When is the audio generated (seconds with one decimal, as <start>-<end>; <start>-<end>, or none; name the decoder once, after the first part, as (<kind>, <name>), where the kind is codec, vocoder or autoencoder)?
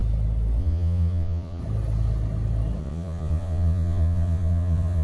0.6-1.6 (vocoder, Vocos); 2.8-5.0